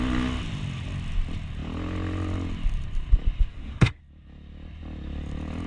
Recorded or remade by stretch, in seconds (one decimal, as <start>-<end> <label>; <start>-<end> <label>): 0.0-3.5 recorded; 3.5-4.0 remade; 4.0-5.7 recorded